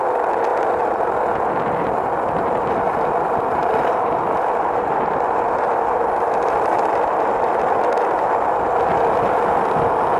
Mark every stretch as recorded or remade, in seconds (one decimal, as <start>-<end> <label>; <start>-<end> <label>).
0.0-3.6 recorded; 3.6-5.7 remade; 5.7-10.2 recorded